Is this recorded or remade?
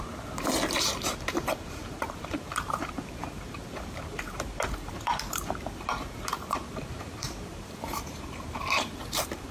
remade